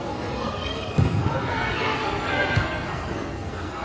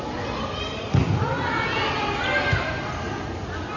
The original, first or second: second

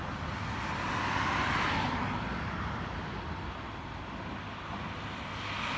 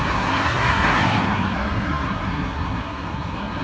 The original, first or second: first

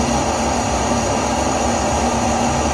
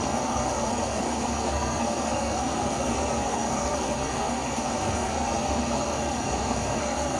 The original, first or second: first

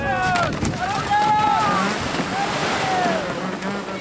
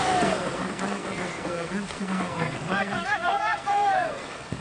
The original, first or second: first